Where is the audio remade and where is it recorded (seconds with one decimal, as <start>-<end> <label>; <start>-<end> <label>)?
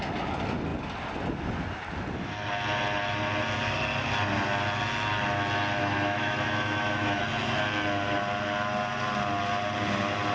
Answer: 0.0-5.8 recorded; 5.8-7.2 remade; 7.2-10.3 recorded